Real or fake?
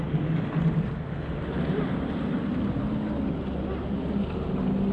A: real